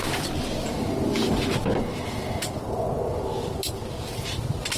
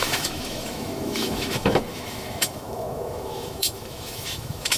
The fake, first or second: second